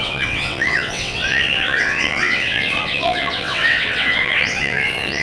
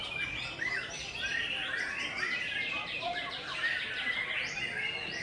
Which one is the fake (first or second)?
first